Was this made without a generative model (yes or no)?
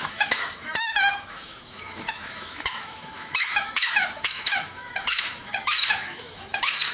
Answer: no